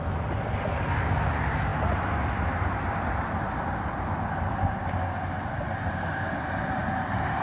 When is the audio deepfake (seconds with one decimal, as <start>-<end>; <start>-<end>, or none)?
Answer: none